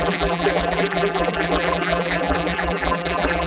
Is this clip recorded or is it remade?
remade